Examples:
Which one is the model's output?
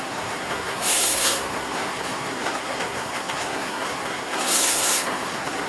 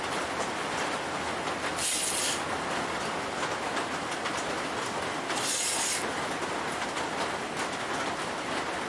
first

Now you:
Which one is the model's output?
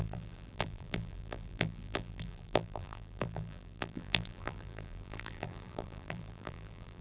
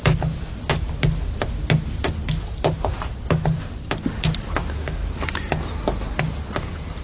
first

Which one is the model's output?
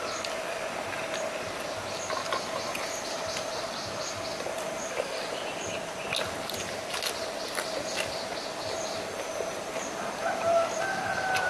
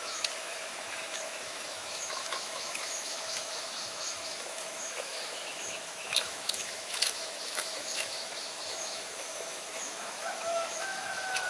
second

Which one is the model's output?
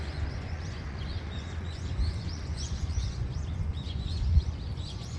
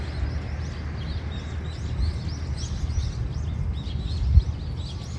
first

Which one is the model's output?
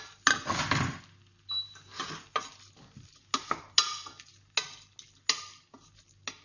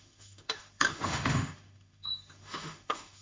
second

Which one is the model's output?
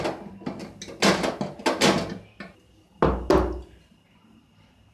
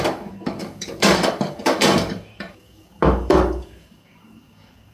second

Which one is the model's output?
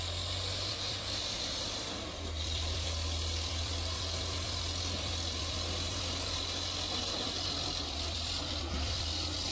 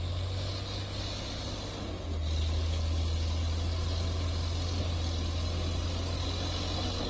first